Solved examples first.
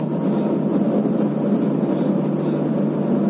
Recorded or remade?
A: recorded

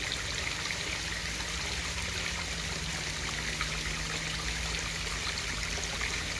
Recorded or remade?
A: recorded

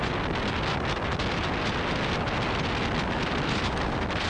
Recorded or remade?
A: recorded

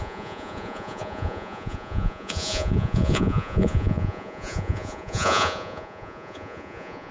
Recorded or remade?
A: remade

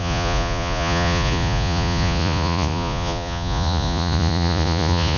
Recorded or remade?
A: remade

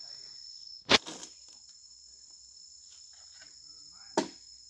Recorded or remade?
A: recorded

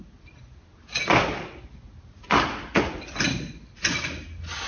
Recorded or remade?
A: recorded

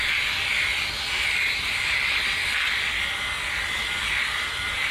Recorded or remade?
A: recorded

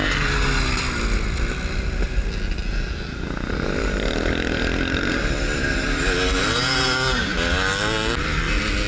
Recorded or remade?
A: recorded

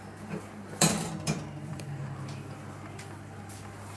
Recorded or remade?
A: remade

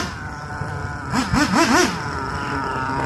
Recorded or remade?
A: recorded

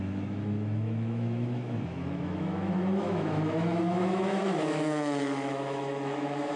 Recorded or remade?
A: remade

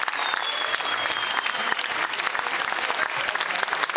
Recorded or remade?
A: recorded